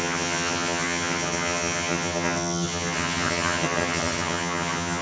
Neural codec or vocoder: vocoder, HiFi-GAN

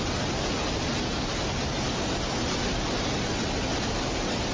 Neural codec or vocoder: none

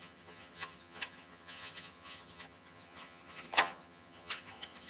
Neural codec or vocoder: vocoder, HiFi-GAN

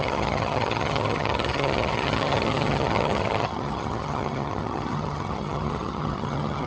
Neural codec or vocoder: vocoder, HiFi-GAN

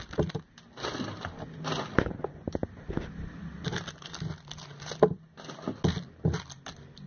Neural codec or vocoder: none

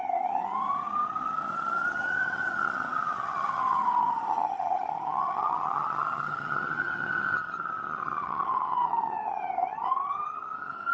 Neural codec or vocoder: vocoder, HiFi-GAN